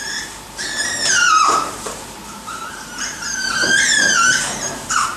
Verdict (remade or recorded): remade